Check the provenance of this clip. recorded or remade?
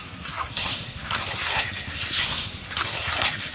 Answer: remade